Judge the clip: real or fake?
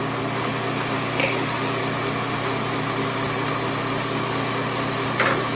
real